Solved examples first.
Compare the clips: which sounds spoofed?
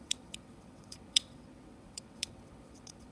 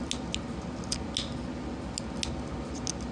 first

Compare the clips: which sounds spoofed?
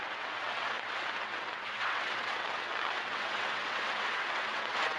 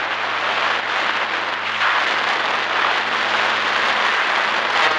first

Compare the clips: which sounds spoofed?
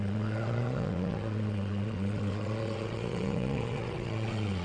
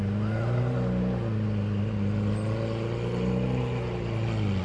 first